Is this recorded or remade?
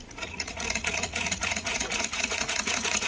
remade